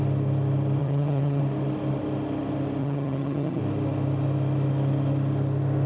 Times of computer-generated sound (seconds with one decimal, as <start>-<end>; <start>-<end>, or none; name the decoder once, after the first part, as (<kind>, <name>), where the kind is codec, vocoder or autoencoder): 0.8-1.4 (vocoder, HiFi-GAN); 2.8-3.6